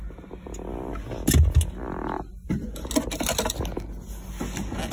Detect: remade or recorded recorded